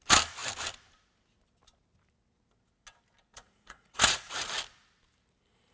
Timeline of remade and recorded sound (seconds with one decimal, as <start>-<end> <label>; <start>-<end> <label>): 0.0-3.3 recorded; 3.3-4.3 remade; 4.3-5.7 recorded